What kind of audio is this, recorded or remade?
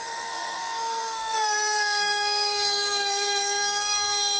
remade